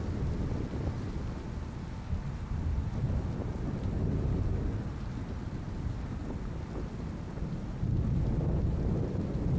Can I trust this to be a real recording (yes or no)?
yes